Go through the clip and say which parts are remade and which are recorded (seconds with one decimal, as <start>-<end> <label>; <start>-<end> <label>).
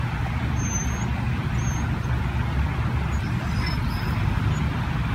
0.0-5.1 recorded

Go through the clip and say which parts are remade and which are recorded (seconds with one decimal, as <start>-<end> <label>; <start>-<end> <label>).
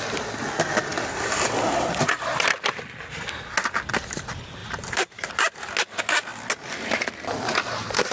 0.0-4.6 recorded; 4.6-5.3 remade; 5.3-8.1 recorded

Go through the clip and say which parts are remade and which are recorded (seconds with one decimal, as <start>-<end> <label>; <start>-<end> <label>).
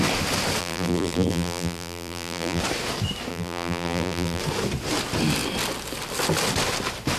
0.0-0.6 recorded; 0.6-2.6 remade; 2.6-3.3 recorded; 3.3-4.4 remade; 4.4-7.2 recorded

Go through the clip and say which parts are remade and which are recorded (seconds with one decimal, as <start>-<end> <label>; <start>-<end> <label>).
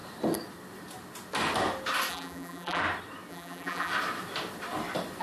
0.0-2.1 recorded; 2.1-2.8 remade; 2.8-3.3 recorded; 3.3-3.9 remade; 3.9-5.2 recorded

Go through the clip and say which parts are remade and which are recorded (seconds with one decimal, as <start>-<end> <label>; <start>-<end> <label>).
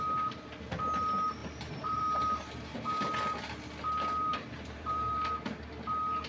0.0-1.4 recorded; 1.4-3.0 remade; 3.0-4.3 recorded; 4.3-5.3 remade; 5.3-6.3 recorded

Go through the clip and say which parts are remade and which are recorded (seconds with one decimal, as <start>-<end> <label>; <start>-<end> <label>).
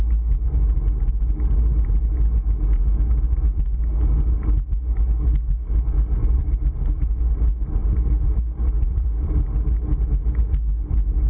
0.0-6.2 recorded; 6.2-9.3 remade; 9.3-11.3 recorded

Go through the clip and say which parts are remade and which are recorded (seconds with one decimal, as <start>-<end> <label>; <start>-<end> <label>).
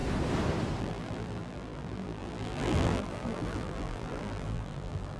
0.0-0.8 recorded; 0.8-5.2 remade